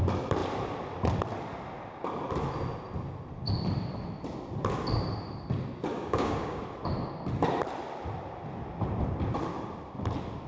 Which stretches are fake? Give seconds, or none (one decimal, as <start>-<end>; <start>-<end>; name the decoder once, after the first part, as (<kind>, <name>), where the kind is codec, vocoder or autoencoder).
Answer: 5.9-6.6 (codec, DAC)